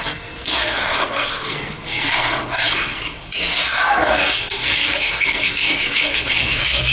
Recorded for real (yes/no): no